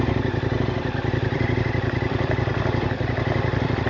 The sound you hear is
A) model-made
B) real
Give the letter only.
A